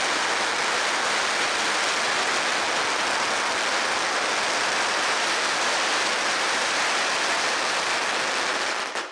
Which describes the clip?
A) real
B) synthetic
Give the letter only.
A